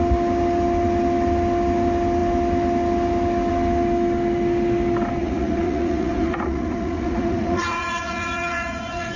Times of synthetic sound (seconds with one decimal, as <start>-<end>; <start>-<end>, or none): 5.2-9.2

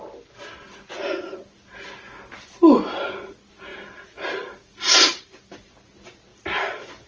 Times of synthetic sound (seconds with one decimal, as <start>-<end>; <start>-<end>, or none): 3.7-5.7; 6.3-7.1

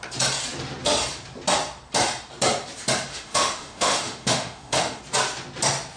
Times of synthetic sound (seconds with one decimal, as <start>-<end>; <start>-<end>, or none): 3.1-5.0

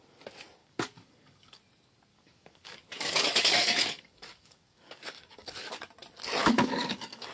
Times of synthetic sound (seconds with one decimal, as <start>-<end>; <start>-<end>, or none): 0.6-1.6; 2.1-5.9; 6.4-7.3